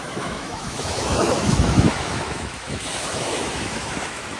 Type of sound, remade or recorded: remade